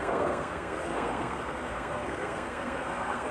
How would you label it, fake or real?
fake